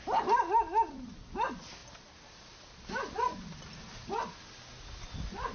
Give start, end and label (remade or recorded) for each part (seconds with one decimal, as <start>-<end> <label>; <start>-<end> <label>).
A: 0.0-5.5 recorded